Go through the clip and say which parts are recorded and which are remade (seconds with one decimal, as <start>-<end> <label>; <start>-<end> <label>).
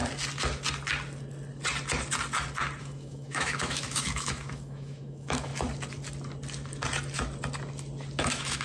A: 0.0-2.8 recorded; 2.8-5.5 remade; 5.5-8.2 recorded; 8.2-8.6 remade